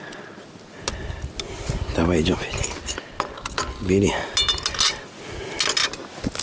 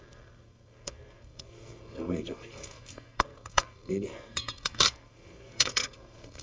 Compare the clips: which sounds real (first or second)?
first